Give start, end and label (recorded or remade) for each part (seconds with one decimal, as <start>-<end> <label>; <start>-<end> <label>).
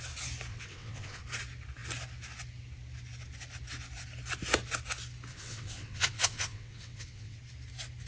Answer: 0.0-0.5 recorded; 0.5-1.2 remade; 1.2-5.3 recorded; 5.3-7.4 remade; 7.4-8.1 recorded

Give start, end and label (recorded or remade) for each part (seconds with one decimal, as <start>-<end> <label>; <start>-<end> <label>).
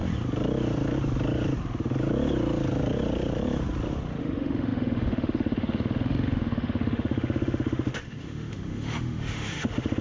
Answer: 0.0-4.2 recorded; 4.2-10.0 remade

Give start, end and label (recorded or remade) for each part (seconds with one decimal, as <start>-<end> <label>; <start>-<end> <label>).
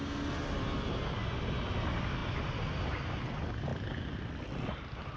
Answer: 0.0-1.1 recorded; 1.1-3.7 remade; 3.7-4.3 recorded; 4.3-5.2 remade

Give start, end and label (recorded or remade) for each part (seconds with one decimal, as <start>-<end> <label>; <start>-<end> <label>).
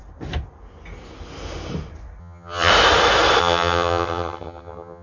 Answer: 0.0-2.2 recorded; 2.2-2.7 remade; 2.7-3.4 recorded; 3.4-5.0 remade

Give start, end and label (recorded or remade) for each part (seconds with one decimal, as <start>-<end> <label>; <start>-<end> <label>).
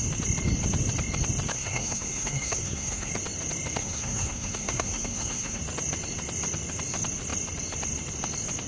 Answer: 0.0-1.5 recorded; 1.5-3.1 remade; 3.1-3.8 recorded; 3.8-5.6 remade; 5.6-8.7 recorded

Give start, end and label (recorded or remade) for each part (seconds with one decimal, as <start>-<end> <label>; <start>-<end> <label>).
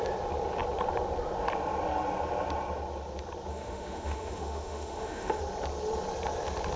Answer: 0.0-3.5 recorded; 3.5-5.4 remade; 5.4-6.8 recorded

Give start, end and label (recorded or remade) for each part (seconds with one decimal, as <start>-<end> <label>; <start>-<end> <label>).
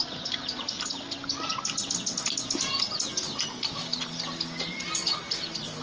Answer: 0.0-5.8 recorded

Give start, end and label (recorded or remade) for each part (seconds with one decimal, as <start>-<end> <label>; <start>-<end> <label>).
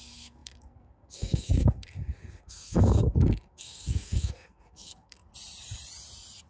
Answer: 0.0-5.3 remade; 5.3-6.5 recorded